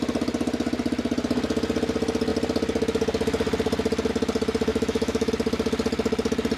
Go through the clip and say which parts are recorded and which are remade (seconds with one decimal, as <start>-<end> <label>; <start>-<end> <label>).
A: 0.0-4.7 recorded; 4.7-5.3 remade; 5.3-6.6 recorded